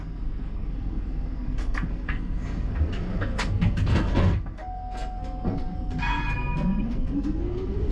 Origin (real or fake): fake